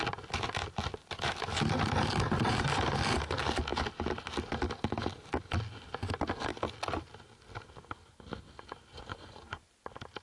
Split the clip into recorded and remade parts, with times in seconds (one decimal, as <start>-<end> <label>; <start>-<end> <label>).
0.0-8.9 recorded; 8.9-9.6 remade; 9.6-10.2 recorded